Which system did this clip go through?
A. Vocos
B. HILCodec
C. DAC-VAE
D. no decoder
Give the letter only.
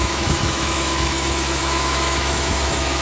C